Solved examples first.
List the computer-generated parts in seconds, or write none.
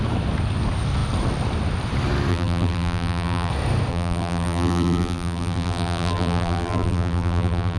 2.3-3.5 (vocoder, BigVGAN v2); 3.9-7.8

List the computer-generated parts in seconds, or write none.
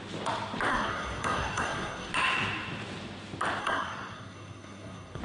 0.7-2.1 (codec, SNAC); 3.6-5.2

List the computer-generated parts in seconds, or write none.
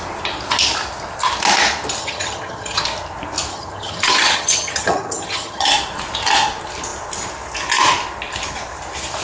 2.0-2.8 (vocoder, HiFi-GAN); 3.5-5.7